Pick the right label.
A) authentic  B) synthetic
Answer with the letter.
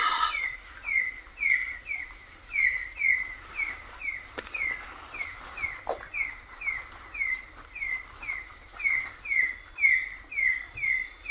A